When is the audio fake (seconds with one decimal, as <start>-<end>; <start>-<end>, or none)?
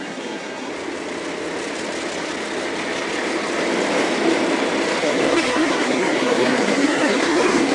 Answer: 0.0-0.7; 5.0-7.7